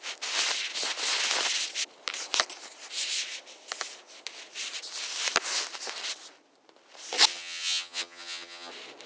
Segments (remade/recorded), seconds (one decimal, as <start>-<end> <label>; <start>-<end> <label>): 0.0-7.3 recorded; 7.3-8.7 remade; 8.7-9.1 recorded